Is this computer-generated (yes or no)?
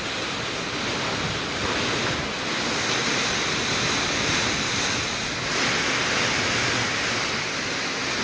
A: no